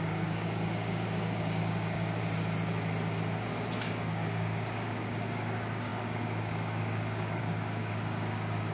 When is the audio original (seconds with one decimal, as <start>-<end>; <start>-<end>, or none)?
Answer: 2.2-3.9